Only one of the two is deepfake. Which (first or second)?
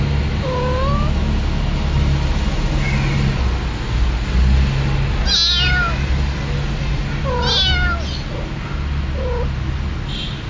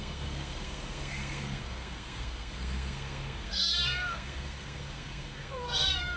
second